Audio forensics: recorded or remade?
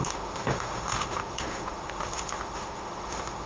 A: remade